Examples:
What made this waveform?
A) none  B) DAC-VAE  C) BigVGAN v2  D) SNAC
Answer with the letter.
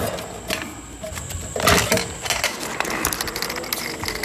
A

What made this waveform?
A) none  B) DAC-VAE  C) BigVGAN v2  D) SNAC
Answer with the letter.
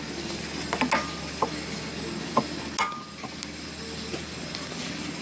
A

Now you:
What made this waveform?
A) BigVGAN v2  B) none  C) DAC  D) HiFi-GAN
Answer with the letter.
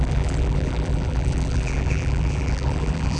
A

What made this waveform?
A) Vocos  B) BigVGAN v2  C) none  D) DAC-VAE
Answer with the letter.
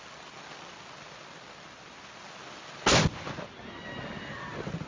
C